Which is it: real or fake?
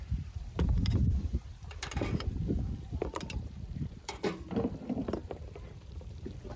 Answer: fake